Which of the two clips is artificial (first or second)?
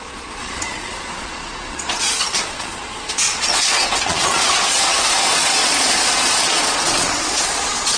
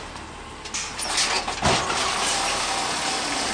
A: first